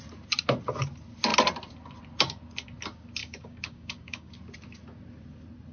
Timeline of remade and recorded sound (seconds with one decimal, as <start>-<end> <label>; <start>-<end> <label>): 0.0-3.2 recorded; 3.2-4.3 remade; 4.3-5.7 recorded